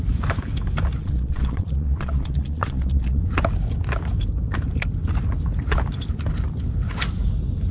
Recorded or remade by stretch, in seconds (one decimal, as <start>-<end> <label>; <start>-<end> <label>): 0.0-1.0 recorded; 1.0-3.2 remade; 3.2-7.7 recorded